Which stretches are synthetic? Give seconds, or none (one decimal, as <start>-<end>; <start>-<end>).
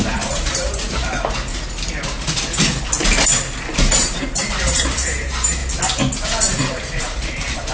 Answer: 0.0-1.0; 4.0-5.6; 7.0-7.7